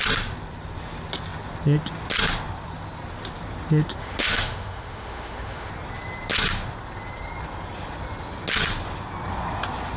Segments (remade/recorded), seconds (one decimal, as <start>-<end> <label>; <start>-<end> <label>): 0.0-4.0 recorded; 4.0-5.7 remade; 5.7-10.0 recorded